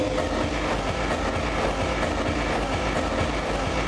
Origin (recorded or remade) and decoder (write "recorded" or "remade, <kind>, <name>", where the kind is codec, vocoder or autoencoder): recorded